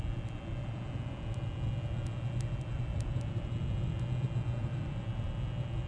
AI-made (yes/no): no